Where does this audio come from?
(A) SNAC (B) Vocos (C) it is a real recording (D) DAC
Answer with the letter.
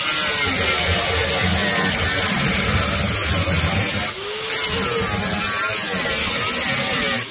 C